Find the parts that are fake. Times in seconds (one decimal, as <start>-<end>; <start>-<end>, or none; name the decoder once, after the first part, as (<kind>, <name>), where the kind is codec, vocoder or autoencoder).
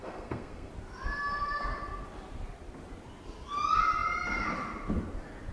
0.0-0.7 (codec, SNAC)